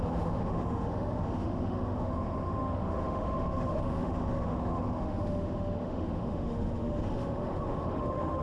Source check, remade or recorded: remade